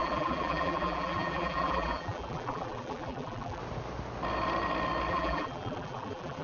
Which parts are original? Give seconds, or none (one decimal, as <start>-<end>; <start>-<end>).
3.6-5.1